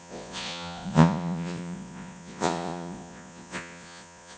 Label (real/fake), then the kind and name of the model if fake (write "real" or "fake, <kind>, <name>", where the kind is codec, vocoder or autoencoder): fake, vocoder, Vocos